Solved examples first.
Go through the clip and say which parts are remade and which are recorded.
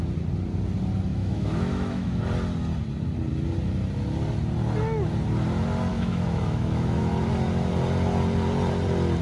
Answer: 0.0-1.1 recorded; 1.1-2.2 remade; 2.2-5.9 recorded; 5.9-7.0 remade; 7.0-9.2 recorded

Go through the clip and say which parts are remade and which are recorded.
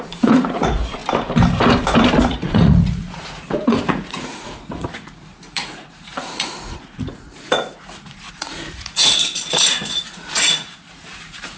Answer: 0.0-1.0 remade; 1.0-2.2 recorded; 2.2-11.6 remade